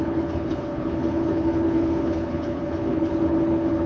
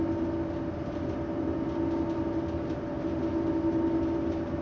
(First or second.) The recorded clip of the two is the second